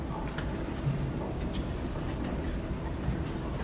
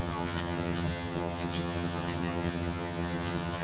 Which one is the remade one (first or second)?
second